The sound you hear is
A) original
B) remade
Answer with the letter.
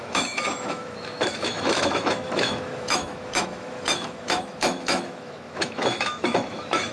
B